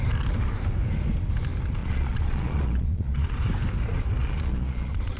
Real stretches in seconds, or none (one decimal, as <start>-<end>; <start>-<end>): 0.0-1.8; 3.3-4.2